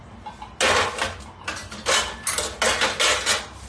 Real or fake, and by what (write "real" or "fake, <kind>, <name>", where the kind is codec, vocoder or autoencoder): real